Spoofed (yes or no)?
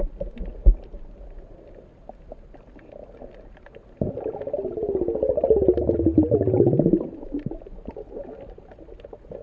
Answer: no